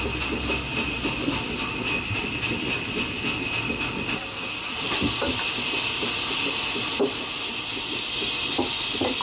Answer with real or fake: real